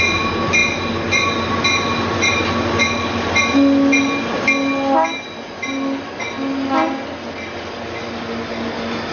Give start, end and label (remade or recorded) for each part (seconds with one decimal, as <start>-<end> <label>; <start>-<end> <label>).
0.0-9.1 recorded